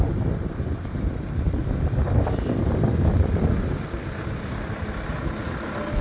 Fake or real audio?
real